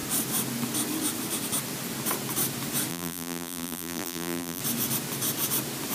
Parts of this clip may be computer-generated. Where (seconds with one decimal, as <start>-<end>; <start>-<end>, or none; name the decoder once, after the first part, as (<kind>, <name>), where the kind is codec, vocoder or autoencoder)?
2.9-4.6 (vocoder, BigVGAN v2)